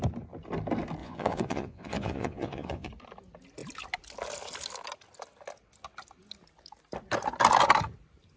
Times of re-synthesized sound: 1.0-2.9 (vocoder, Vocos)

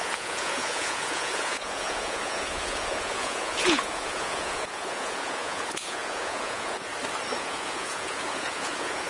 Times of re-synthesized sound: 0.0-6.9 (vocoder, Vocos); 7.4-9.1

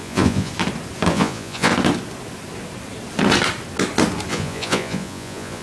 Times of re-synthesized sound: 0.0-0.5 (vocoder, Vocos); 1.1-1.7; 4.3-5.6

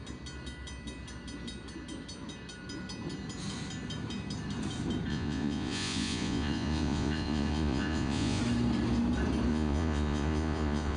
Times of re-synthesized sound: 5.1-8.4 (vocoder, Vocos); 9.5-11.0

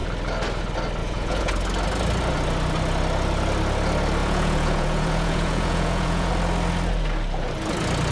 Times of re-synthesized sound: 1.0-1.5 (vocoder, Vocos); 4.2-6.3

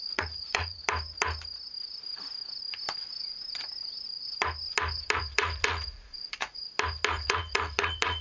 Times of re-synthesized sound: 0.0-0.8 (vocoder, Vocos); 5.2-6.6; 7.2-8.2